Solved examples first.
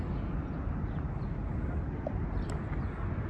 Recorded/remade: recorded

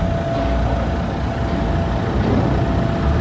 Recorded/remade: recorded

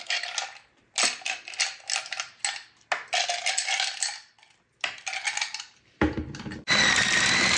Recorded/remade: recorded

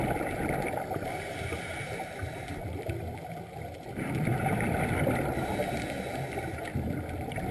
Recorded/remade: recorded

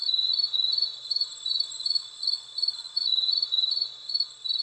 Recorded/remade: remade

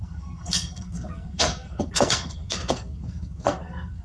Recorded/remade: remade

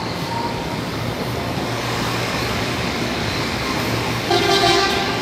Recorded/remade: remade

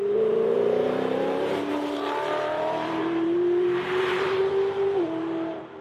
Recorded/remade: remade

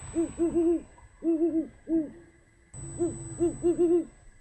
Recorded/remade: recorded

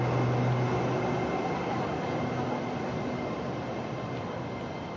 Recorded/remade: recorded